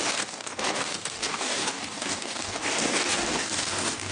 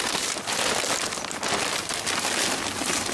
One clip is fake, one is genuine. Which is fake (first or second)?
first